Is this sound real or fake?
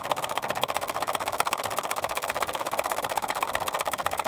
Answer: fake